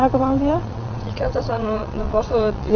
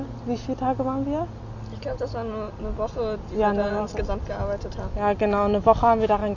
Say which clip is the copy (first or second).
first